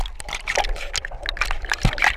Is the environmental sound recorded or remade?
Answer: recorded